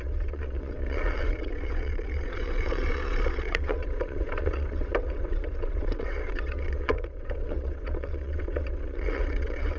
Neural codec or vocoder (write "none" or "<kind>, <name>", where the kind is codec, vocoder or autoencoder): vocoder, WaveNeXt